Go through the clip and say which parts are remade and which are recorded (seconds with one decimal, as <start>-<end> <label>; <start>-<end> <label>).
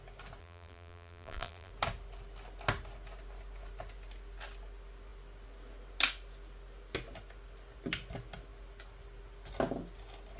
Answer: 0.0-0.4 recorded; 0.4-1.7 remade; 1.7-10.4 recorded